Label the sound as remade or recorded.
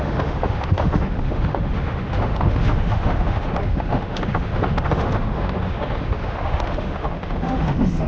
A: remade